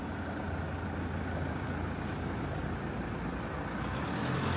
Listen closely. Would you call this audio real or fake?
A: real